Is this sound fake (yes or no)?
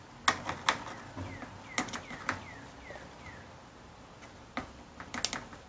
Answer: no